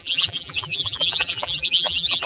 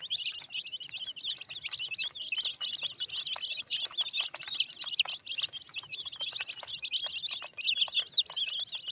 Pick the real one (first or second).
second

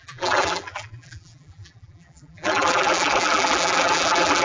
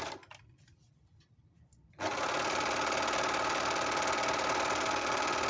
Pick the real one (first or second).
second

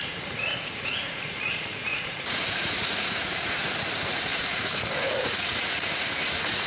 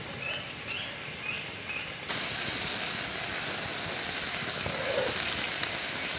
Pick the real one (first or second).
second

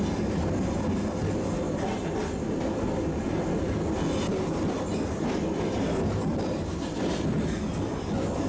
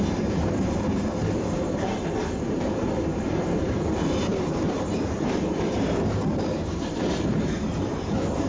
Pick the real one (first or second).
first